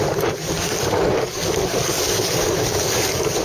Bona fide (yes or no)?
no